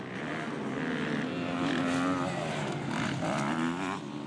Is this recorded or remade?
recorded